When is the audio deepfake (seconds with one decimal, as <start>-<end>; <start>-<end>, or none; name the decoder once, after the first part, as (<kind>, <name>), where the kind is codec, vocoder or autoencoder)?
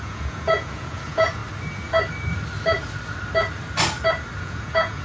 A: 0.0-1.4 (vocoder, Vocos); 4.4-5.0